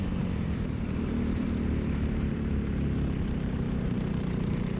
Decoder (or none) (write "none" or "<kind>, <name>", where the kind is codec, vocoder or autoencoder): vocoder, BigVGAN v2